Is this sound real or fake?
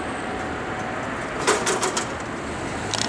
real